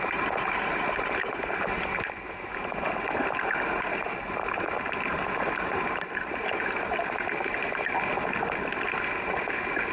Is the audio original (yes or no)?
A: yes